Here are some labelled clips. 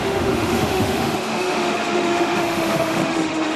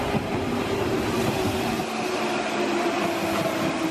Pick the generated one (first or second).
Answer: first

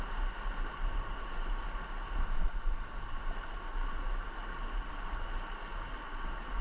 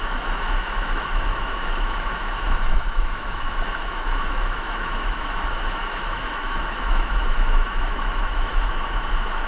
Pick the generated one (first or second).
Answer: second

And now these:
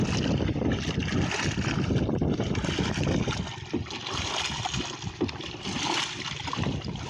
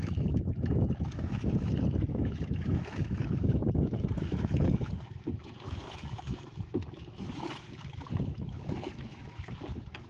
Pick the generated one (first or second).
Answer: second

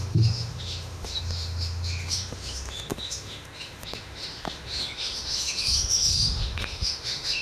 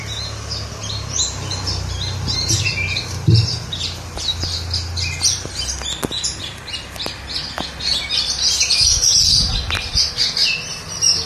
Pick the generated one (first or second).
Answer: first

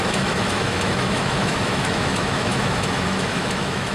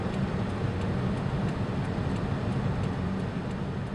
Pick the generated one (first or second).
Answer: first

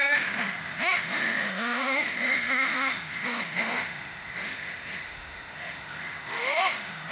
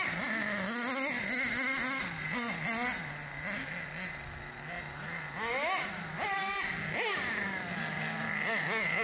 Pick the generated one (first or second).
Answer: first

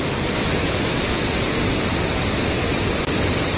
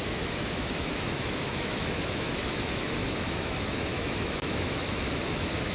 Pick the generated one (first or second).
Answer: second